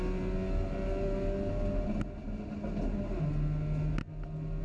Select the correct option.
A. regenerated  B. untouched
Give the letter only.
B